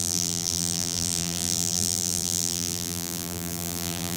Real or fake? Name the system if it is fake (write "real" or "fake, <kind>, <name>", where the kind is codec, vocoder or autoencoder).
fake, vocoder, BigVGAN v2